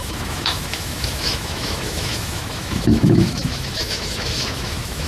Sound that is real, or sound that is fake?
fake